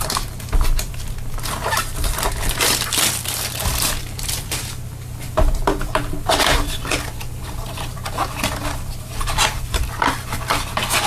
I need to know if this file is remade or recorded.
remade